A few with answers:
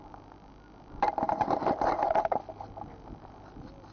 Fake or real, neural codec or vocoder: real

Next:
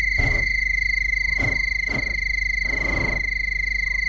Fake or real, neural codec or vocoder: real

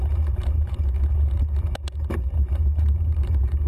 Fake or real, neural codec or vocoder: fake, vocoder, BigVGAN v2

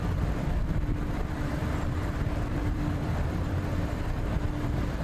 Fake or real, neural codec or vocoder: fake, vocoder, BigVGAN v2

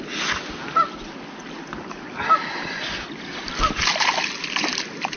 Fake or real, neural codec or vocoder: real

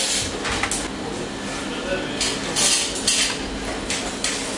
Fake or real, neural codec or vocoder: real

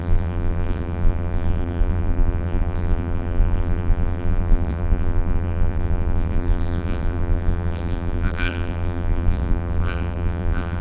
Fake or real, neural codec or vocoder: fake, vocoder, BigVGAN v2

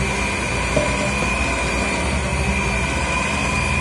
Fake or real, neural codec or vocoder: real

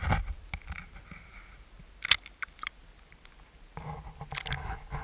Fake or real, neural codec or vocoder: real